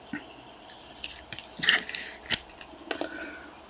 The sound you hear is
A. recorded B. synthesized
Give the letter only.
A